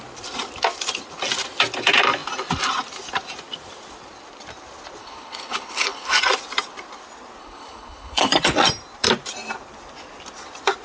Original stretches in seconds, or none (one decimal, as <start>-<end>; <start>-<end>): 0.0-5.0; 6.2-7.4; 8.3-10.8

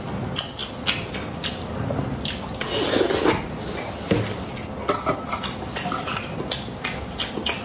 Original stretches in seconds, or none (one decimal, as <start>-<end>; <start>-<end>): 0.0-7.6

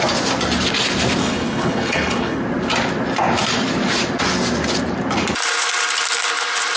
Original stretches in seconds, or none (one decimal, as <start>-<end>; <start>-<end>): 0.0-1.2; 2.4-6.8

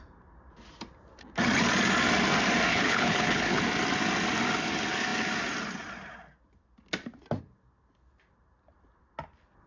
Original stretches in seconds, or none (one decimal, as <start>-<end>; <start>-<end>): 0.0-2.7; 3.6-9.7

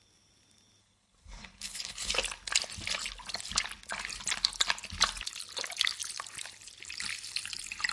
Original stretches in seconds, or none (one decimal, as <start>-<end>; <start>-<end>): 0.0-0.8; 2.1-7.9

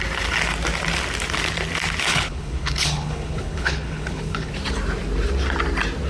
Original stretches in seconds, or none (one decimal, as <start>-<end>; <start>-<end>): 0.0-2.1; 4.5-6.1

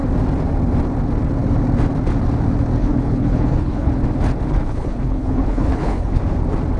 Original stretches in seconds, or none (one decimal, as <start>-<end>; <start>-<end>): 0.0-2.8; 3.9-4.5; 6.2-6.8

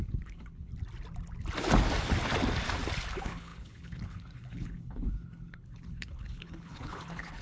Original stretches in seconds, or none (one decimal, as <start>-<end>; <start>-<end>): 0.7-3.1